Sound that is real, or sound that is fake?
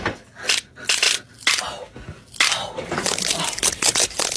real